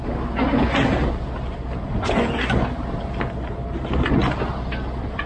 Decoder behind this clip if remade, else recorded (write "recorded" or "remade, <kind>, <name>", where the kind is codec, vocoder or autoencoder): recorded